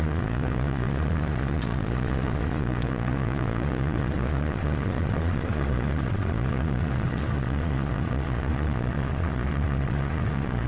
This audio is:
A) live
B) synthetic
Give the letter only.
B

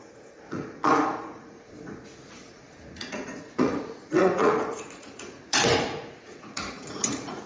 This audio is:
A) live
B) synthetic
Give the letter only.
B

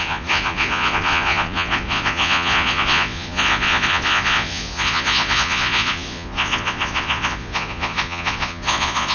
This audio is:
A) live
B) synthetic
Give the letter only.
B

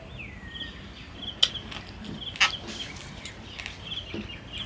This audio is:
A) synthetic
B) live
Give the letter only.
B